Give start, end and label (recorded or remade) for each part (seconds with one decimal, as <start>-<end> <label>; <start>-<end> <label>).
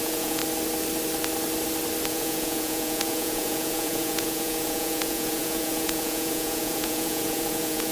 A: 0.0-0.4 remade; 0.4-2.1 recorded; 2.1-7.9 remade